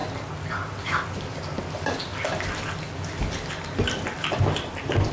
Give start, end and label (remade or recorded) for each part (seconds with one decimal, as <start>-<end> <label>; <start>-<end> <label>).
0.0-5.1 recorded